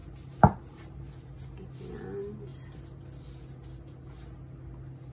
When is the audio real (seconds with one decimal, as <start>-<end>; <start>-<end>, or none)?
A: 1.1-5.1